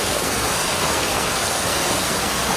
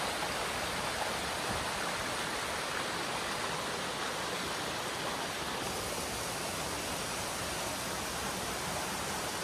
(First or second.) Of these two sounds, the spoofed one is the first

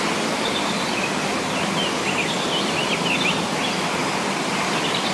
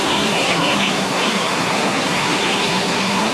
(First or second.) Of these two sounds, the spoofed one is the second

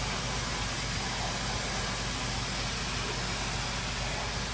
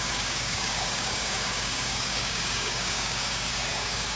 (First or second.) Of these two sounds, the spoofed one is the second